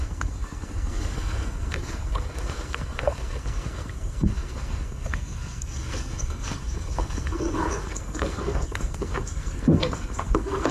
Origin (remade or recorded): remade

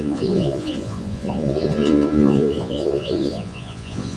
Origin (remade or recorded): remade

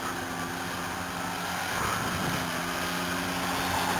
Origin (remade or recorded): recorded